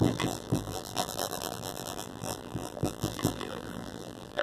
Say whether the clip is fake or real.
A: fake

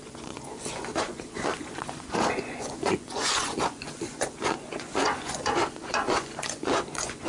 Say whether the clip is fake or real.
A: fake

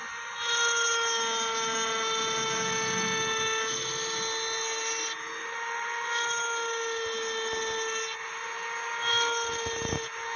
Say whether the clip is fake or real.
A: real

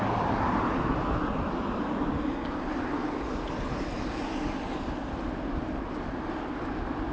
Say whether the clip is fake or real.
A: real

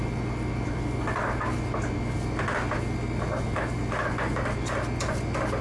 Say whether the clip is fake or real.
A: real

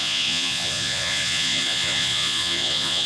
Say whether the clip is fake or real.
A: fake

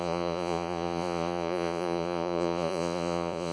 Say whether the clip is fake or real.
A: fake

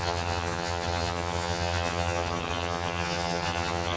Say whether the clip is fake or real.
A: fake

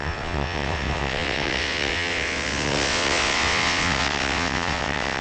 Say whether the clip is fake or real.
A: fake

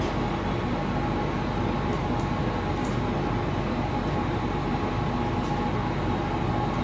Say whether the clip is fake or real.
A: real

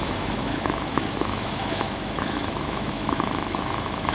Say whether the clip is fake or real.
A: fake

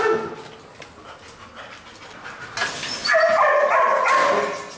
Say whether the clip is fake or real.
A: real